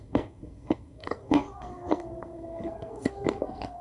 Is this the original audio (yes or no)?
no